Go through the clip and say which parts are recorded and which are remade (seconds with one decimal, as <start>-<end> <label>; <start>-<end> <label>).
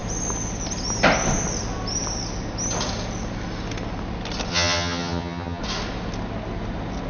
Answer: 0.0-4.5 recorded; 4.5-5.6 remade; 5.6-7.1 recorded